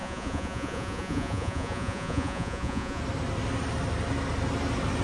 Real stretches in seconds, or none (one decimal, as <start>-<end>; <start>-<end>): 3.0-5.0